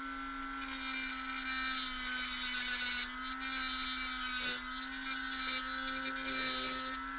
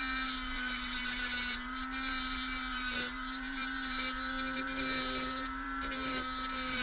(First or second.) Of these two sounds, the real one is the first